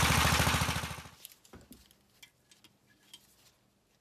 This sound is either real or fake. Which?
real